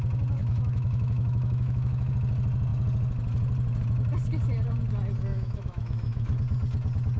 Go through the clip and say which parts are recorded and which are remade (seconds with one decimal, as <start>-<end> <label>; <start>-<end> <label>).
0.0-0.4 recorded; 0.4-2.1 remade; 2.1-5.3 recorded; 5.3-6.4 remade; 6.4-7.2 recorded